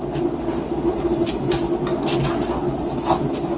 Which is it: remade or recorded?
recorded